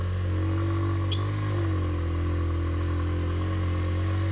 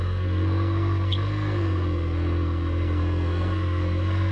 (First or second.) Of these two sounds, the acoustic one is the first